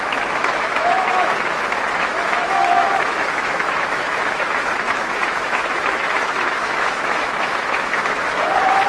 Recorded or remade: remade